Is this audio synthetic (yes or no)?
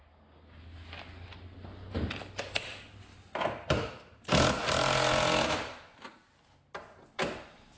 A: no